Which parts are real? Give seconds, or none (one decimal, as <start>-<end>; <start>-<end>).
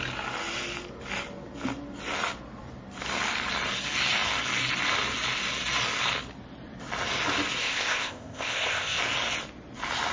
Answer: 0.0-7.6; 9.0-10.1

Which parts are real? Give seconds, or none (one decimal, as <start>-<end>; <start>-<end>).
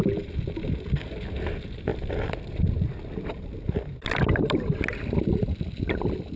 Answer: 0.0-6.4